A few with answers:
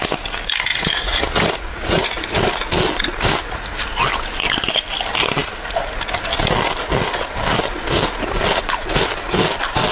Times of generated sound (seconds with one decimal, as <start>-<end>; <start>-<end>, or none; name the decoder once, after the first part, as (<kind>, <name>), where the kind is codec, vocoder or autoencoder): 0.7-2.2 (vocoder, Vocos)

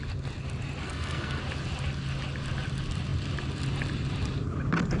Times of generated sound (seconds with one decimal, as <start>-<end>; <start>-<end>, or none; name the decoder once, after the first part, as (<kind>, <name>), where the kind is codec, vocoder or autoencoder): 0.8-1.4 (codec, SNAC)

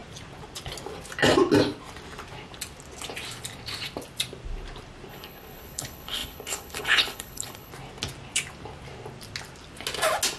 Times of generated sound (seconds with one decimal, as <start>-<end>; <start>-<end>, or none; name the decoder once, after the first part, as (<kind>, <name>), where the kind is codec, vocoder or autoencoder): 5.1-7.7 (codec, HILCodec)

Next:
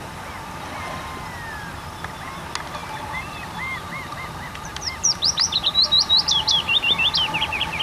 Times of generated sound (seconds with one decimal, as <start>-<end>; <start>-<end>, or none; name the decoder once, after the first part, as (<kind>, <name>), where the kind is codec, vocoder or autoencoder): 2.8-7.8 (vocoder, BigVGAN v2)

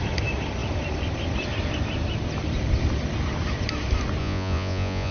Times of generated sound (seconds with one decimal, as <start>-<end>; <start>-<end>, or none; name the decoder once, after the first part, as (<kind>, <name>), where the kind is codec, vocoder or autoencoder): 4.2-5.1 (vocoder, Vocos)